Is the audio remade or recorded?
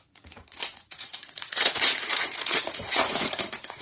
remade